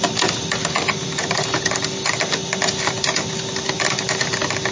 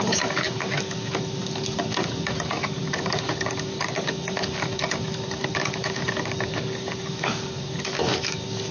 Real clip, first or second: first